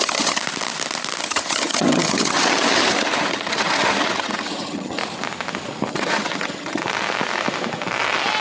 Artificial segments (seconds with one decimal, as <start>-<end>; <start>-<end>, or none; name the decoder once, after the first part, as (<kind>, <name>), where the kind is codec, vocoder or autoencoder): 0.0-0.4 (vocoder, HiFi-GAN); 1.2-5.0; 5.9-6.8